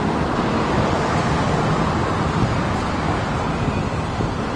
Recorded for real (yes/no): yes